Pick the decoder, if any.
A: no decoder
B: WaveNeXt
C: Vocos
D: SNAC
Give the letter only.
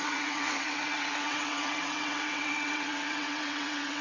B